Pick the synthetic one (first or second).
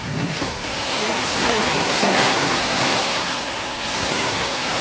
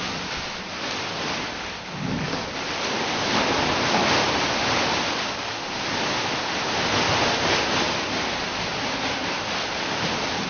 first